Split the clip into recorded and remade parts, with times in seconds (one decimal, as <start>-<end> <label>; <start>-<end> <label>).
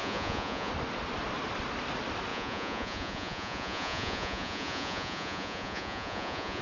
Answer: 0.0-0.7 remade; 0.7-2.3 recorded; 2.3-6.6 remade